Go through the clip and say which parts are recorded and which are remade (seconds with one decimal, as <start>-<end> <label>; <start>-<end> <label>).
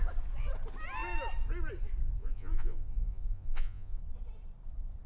0.0-2.2 recorded; 2.2-4.0 remade; 4.0-5.1 recorded